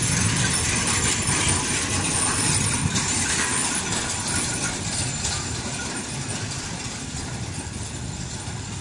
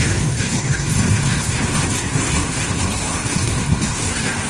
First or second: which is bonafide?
first